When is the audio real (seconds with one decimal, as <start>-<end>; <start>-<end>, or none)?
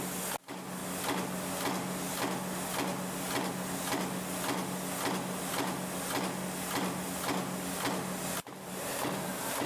0.0-9.7